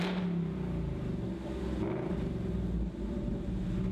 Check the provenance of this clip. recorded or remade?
recorded